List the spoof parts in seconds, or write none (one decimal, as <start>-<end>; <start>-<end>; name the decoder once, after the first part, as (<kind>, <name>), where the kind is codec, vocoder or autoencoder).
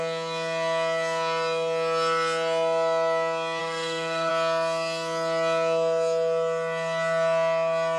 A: 3.6-4.3 (codec, SNAC)